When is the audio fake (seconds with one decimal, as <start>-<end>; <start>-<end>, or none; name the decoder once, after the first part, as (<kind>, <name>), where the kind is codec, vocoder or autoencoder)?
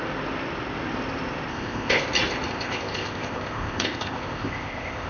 1.5-2.0 (codec, ZipCodec); 2.5-5.1